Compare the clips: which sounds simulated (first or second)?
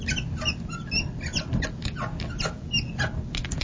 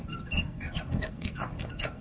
second